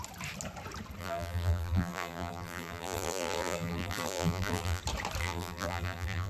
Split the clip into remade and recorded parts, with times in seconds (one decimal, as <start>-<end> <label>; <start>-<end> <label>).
0.0-1.0 recorded; 1.0-4.8 remade; 4.8-5.2 recorded; 5.2-6.3 remade